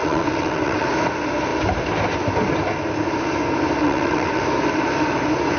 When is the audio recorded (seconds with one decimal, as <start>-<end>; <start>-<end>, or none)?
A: 0.9-3.8; 4.4-5.6